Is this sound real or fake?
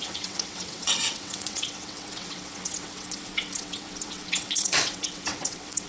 fake